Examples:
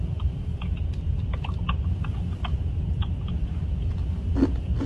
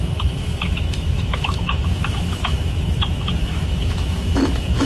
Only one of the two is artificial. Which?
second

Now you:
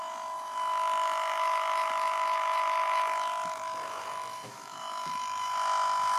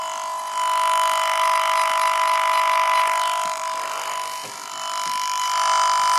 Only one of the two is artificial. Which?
first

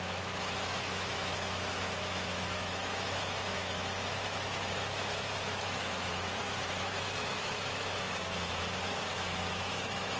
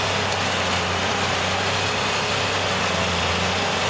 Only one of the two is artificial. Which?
first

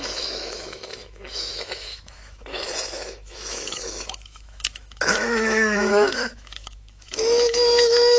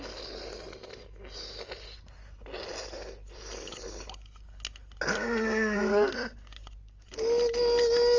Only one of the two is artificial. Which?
first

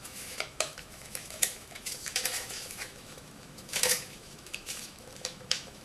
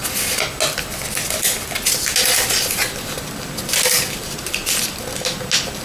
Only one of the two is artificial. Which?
first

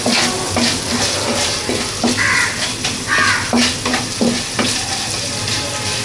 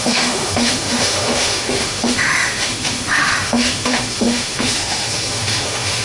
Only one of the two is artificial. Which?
second